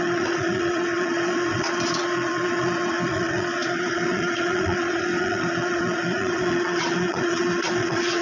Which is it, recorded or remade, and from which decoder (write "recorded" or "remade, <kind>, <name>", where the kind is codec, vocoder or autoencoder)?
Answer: remade, vocoder, Vocos